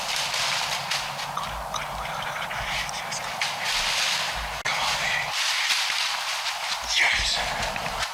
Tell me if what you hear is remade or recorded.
recorded